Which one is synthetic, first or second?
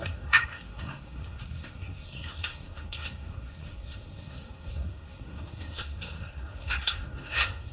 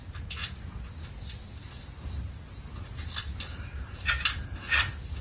first